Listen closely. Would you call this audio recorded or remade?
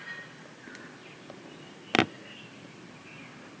recorded